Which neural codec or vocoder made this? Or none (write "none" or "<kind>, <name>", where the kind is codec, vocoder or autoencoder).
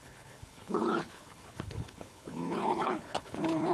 codec, HILCodec